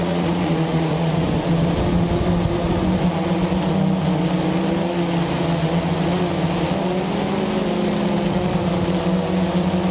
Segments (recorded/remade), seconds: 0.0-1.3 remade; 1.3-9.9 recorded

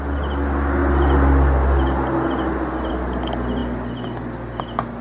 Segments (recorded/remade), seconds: 0.0-5.0 recorded

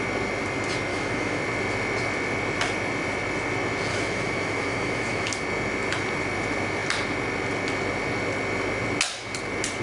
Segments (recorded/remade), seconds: 0.0-0.9 recorded; 0.9-1.4 remade; 1.4-3.9 recorded; 3.9-5.3 remade; 5.3-9.8 recorded

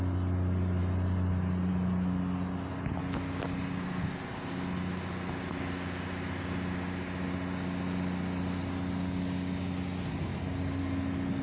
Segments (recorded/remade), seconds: 0.0-11.4 recorded

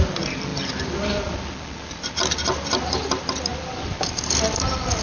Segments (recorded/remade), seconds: 0.0-5.0 recorded

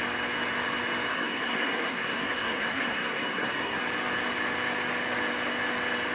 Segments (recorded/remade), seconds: 0.0-1.1 recorded; 1.1-3.8 remade; 3.8-6.1 recorded

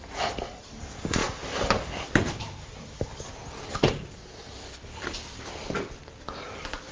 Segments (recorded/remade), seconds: 0.0-1.2 remade; 1.2-1.7 recorded; 1.7-6.9 remade